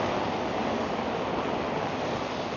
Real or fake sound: real